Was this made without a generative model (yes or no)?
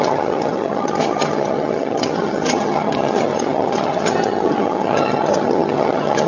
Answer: no